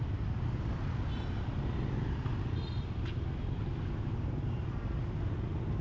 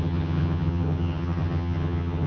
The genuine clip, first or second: first